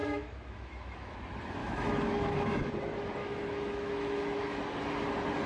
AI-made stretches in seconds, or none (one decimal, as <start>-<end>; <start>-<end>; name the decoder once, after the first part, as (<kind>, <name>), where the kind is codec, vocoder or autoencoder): 0.0-1.2 (autoencoder, DAC-VAE); 1.6-2.7; 3.2-4.6